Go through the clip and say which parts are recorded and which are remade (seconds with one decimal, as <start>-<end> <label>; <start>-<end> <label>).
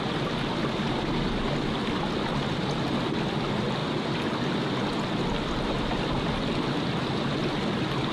0.0-8.1 recorded